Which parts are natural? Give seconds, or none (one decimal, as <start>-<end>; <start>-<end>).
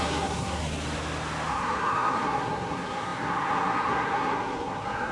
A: 0.6-1.5